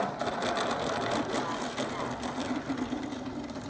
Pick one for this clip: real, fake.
real